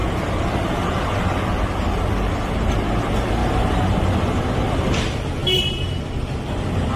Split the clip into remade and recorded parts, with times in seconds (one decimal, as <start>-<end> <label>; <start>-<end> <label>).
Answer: 0.0-7.0 recorded

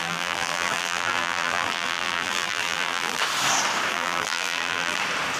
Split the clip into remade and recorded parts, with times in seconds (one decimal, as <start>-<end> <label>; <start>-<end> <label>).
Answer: 0.0-3.2 remade; 3.2-3.9 recorded; 3.9-5.0 remade; 5.0-5.4 recorded

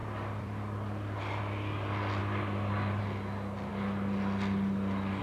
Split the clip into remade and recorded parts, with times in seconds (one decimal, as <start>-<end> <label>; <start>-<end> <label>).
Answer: 0.0-1.4 remade; 1.4-5.2 recorded

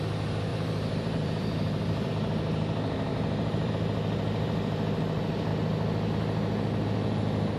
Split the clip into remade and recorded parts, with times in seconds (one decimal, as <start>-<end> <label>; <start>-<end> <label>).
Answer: 0.0-0.5 recorded; 0.5-2.1 remade; 2.1-3.1 recorded; 3.1-3.7 remade; 3.7-7.6 recorded

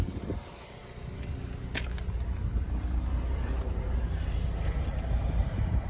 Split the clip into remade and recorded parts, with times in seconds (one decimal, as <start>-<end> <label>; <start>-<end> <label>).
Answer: 0.0-5.4 recorded; 5.4-5.9 remade

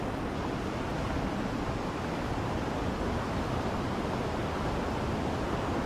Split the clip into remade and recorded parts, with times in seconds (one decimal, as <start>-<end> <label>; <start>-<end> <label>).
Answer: 0.0-5.9 recorded

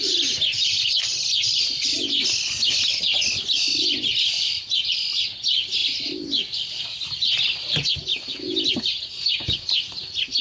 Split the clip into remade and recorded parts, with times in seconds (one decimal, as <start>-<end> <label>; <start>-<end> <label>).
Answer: 0.0-10.4 recorded